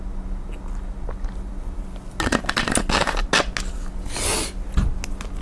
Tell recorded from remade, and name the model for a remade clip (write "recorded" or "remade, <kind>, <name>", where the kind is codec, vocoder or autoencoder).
recorded